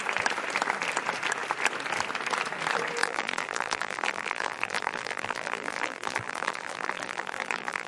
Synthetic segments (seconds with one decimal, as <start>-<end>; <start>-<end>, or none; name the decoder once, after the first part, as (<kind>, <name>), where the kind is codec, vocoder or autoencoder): 3.0-7.9 (vocoder, BigVGAN v2)